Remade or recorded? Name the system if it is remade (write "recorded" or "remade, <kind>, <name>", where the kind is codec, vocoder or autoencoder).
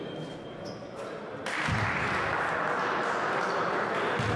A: recorded